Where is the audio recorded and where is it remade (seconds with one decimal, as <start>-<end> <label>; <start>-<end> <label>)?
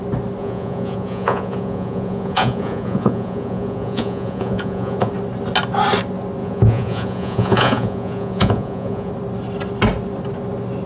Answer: 0.0-0.4 recorded; 0.4-5.1 remade; 5.1-6.4 recorded; 6.4-9.1 remade; 9.1-10.9 recorded